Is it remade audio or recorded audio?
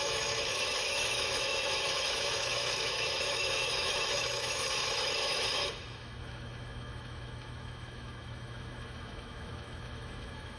remade